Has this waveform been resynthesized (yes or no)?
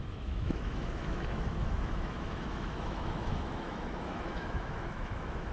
yes